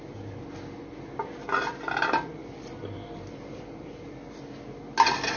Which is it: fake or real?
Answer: real